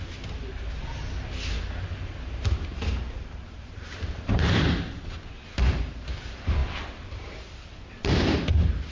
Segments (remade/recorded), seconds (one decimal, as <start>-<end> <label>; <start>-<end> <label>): 0.0-2.7 recorded; 2.7-4.6 remade; 4.6-8.9 recorded